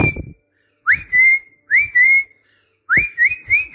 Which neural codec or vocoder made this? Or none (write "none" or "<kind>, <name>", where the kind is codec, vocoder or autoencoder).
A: vocoder, BigVGAN v2